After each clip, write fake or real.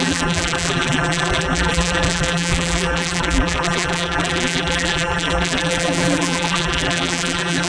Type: fake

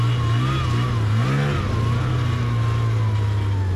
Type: real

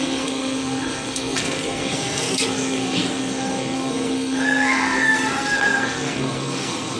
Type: fake